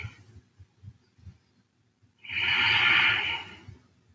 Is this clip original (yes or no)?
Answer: yes